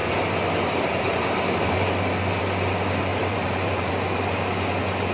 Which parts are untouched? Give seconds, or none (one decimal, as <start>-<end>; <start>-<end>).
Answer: 2.4-3.1; 3.9-5.1